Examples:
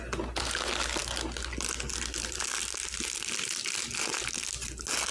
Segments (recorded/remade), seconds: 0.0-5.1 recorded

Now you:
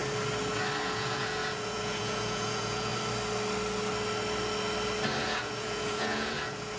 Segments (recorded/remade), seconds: 0.0-0.8 recorded; 0.8-2.9 remade; 2.9-5.2 recorded; 5.2-6.8 remade

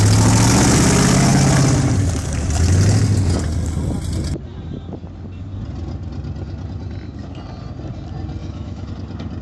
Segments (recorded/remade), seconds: 0.0-8.4 recorded; 8.4-8.9 remade; 8.9-9.4 recorded

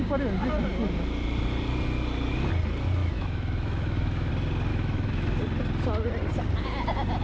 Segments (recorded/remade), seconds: 0.0-3.0 recorded; 3.0-4.3 remade; 4.3-4.7 recorded; 4.7-5.4 remade; 5.4-7.2 recorded

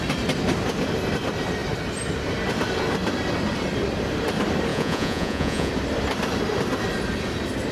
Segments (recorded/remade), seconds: 0.0-4.7 recorded; 4.7-5.7 remade; 5.7-7.7 recorded

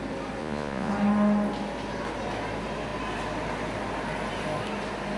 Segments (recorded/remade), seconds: 0.0-0.4 recorded; 0.4-0.9 remade; 0.9-5.2 recorded

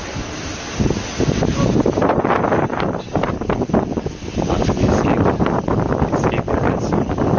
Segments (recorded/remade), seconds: 0.0-0.5 remade; 0.5-1.1 recorded; 1.1-2.2 remade; 2.2-2.7 recorded; 2.7-3.3 remade; 3.3-7.4 recorded